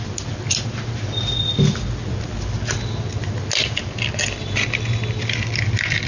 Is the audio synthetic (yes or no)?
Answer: no